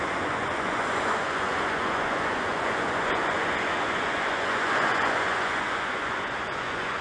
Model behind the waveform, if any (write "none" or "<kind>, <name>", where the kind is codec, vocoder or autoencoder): vocoder, Vocos